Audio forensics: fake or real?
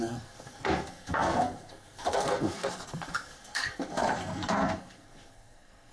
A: fake